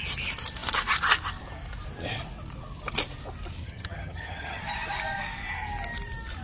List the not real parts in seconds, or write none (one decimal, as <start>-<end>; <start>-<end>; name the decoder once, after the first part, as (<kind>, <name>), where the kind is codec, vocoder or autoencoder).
3.6-4.6 (vocoder, HiFi-GAN)